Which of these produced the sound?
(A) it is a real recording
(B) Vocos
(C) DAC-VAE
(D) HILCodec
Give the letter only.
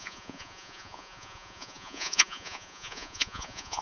B